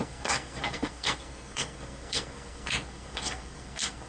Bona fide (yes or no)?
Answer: no